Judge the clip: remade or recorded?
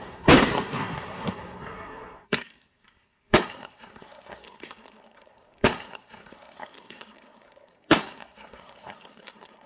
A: remade